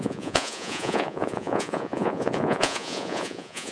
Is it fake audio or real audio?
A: fake